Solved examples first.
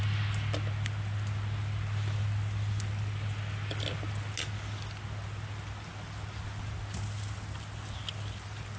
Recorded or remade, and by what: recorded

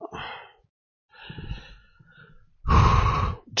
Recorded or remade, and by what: recorded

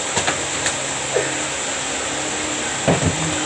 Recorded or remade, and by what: recorded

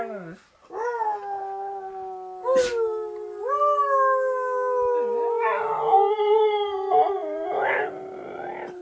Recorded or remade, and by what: recorded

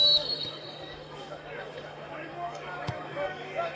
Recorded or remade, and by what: remade, codec, DAC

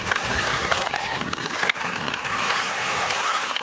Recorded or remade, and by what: remade, codec, SNAC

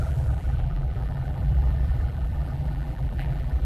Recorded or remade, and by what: remade, vocoder, BigVGAN v2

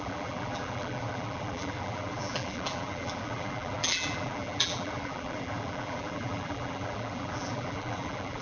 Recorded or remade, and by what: remade, vocoder, BigVGAN v2